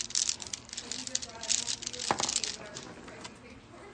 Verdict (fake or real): real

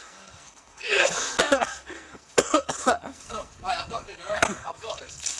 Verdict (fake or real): fake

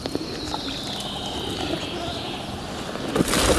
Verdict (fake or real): real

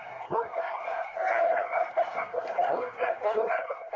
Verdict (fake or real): fake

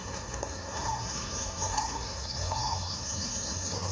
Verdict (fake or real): fake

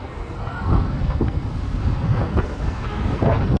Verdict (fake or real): fake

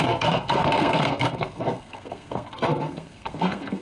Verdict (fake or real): fake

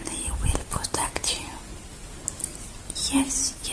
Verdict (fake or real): real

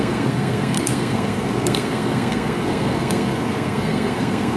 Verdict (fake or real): fake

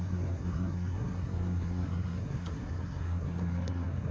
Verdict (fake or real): fake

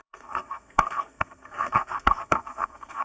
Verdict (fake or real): fake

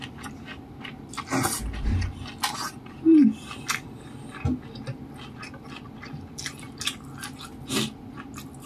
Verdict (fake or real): real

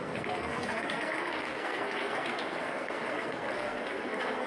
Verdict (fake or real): fake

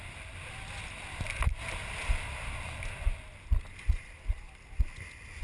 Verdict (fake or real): real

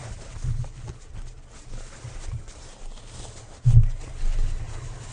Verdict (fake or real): real